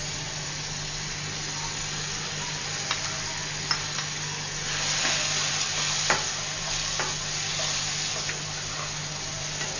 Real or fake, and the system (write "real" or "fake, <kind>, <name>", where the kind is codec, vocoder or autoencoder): real